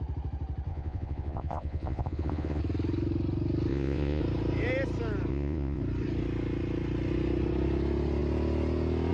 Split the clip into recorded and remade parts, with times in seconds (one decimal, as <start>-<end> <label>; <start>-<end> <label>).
0.0-0.7 recorded; 0.7-2.6 remade; 2.6-3.7 recorded; 3.7-4.2 remade; 4.2-5.3 recorded; 5.3-5.8 remade; 5.8-9.1 recorded